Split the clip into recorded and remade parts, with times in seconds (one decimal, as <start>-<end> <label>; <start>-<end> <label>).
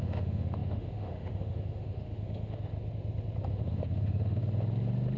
0.0-2.7 remade; 2.7-3.5 recorded; 3.5-4.4 remade; 4.4-5.2 recorded